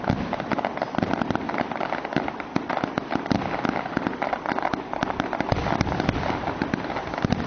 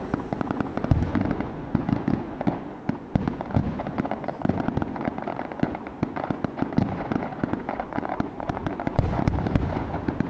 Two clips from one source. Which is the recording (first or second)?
first